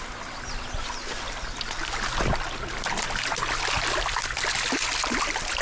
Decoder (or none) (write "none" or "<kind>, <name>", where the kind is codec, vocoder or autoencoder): none